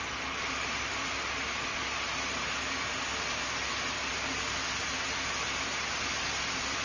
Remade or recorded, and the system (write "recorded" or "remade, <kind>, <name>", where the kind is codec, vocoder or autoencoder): recorded